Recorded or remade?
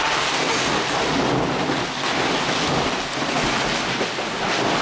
recorded